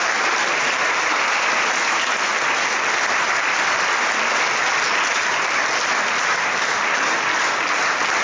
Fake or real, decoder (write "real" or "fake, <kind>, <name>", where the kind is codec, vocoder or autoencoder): real